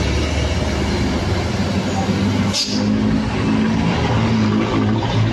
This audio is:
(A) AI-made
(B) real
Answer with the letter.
B